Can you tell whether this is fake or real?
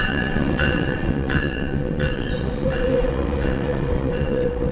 fake